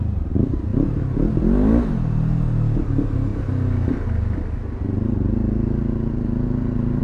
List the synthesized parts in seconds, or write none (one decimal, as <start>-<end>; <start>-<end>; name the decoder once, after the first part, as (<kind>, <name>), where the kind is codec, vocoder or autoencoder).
none